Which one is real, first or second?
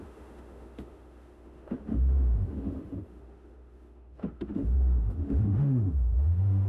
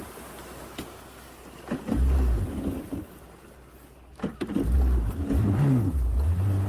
second